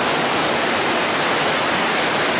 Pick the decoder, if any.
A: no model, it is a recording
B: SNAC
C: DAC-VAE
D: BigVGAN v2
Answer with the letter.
A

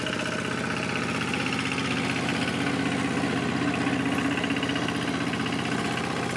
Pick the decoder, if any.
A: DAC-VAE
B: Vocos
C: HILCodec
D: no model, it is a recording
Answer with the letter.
D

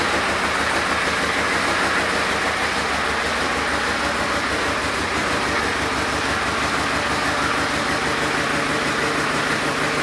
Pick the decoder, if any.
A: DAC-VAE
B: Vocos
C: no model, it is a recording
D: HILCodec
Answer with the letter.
C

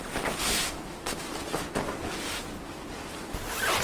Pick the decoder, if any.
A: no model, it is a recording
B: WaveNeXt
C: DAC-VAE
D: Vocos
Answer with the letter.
A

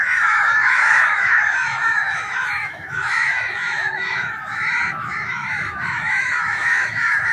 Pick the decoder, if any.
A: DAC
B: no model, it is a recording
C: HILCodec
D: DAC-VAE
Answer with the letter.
D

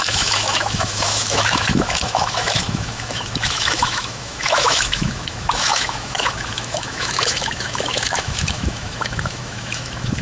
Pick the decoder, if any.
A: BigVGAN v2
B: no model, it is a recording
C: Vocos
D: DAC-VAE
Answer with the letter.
D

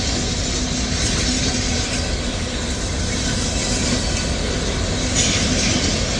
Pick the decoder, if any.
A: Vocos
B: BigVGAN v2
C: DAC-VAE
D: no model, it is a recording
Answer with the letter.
D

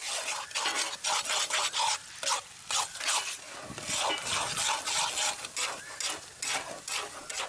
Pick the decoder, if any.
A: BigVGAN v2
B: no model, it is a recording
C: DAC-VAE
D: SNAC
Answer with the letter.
B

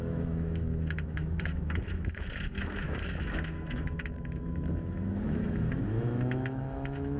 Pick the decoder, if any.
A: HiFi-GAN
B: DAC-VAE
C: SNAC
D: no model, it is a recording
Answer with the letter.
B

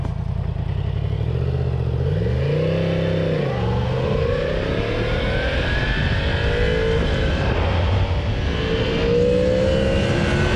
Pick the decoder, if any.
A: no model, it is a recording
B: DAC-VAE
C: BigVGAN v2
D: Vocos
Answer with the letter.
A